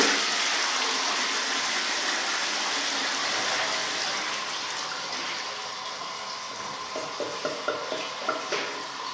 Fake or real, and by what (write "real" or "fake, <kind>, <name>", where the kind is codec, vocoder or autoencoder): real